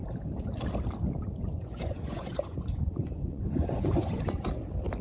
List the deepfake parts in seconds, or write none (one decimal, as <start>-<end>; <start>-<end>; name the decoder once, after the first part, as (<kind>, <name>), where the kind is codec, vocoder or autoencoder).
1.5-4.5 (vocoder, Vocos)